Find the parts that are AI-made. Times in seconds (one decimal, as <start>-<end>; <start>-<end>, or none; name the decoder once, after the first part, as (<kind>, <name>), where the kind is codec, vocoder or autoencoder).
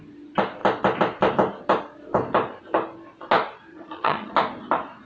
3.7-4.3 (vocoder, HiFi-GAN)